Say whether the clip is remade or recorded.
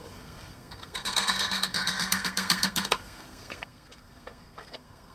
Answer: remade